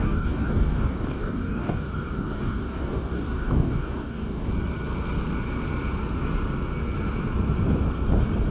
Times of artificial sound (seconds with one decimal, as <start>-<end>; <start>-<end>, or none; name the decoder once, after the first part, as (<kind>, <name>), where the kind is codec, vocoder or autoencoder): 0.0-4.5 (codec, DAC)